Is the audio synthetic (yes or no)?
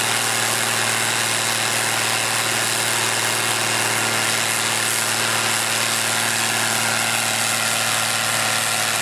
no